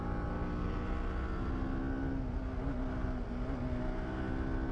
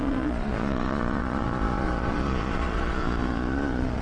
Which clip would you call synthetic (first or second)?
second